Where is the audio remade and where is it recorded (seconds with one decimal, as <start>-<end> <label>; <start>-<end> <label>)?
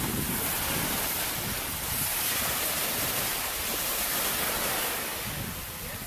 0.0-0.5 recorded; 0.5-4.1 remade; 4.1-6.1 recorded